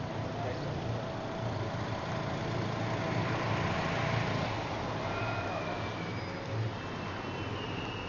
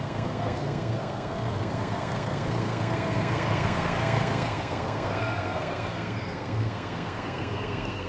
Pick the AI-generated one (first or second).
second